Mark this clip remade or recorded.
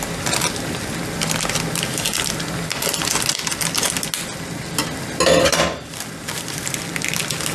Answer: recorded